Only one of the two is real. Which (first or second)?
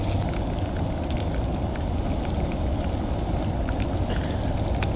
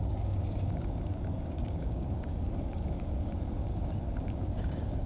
first